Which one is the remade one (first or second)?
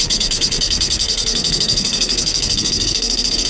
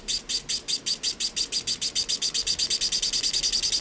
first